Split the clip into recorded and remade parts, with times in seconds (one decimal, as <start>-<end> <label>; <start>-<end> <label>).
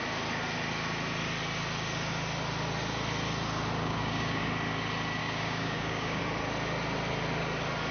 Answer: 0.0-3.9 recorded; 3.9-4.5 remade; 4.5-5.2 recorded; 5.2-6.2 remade; 6.2-7.9 recorded